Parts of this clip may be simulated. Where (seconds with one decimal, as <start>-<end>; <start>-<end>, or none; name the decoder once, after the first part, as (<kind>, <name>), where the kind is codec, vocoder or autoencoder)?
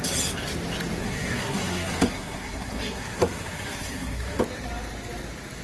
1.0-4.4 (codec, SNAC)